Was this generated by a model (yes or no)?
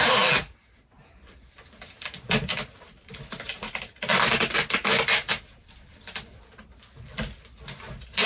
no